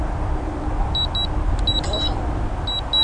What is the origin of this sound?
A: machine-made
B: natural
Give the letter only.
B